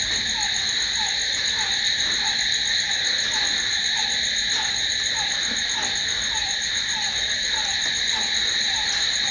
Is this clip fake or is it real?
real